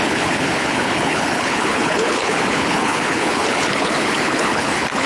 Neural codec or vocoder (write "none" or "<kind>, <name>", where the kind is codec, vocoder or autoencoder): codec, HILCodec